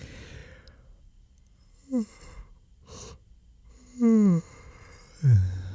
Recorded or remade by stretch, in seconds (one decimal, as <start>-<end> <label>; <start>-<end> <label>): 0.0-5.7 recorded